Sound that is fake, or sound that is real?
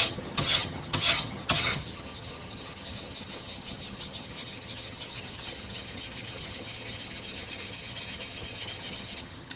fake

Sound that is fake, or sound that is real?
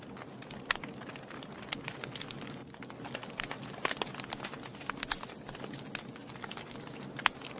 real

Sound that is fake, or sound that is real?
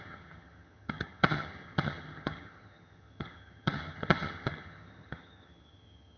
fake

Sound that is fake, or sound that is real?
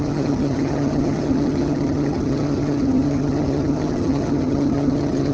fake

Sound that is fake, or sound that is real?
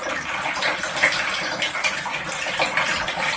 real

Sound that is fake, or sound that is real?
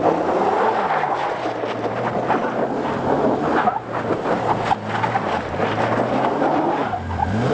real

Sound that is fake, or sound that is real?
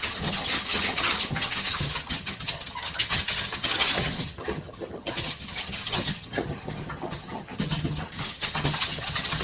fake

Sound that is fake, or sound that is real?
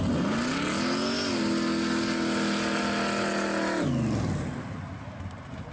real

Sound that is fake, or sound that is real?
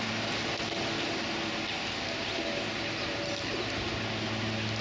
real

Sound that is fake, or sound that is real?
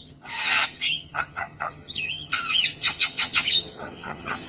fake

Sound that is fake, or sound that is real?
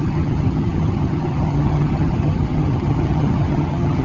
fake